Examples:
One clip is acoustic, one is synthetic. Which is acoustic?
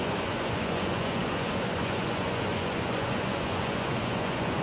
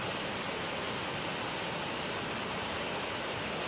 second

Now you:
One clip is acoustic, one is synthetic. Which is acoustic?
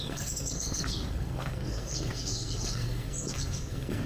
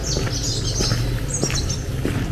second